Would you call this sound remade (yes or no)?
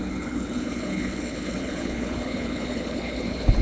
yes